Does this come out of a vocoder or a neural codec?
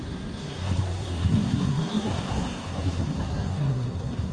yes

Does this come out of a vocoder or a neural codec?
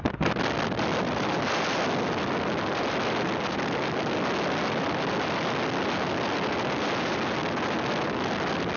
no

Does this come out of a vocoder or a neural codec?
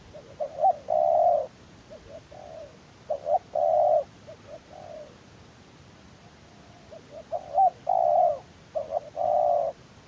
no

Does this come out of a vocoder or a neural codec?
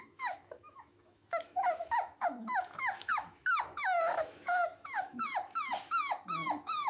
yes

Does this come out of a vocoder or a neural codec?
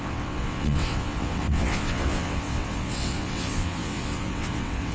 yes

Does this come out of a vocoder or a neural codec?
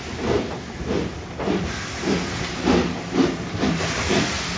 no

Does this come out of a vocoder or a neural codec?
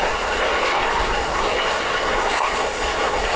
yes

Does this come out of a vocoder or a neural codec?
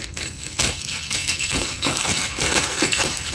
yes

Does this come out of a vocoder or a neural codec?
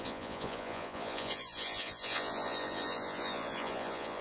yes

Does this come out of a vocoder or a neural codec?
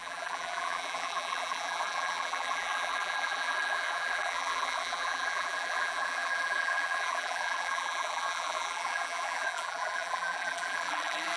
yes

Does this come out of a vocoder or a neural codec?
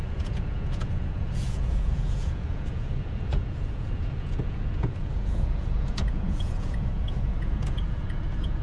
yes